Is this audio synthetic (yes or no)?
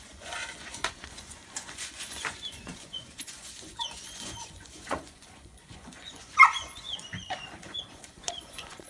yes